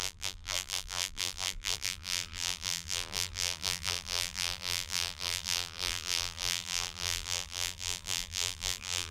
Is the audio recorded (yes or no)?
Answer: no